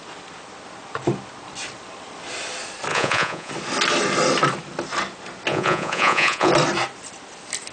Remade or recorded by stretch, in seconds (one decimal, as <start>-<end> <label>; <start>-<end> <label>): 0.0-2.9 recorded; 2.9-3.5 remade; 3.5-5.5 recorded; 5.5-6.5 remade; 6.5-7.7 recorded